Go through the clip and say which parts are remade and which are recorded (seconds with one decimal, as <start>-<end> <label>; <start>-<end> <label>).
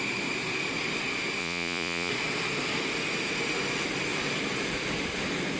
0.0-1.4 recorded; 1.4-2.1 remade; 2.1-5.6 recorded